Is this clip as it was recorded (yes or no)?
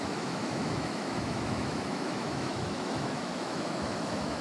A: no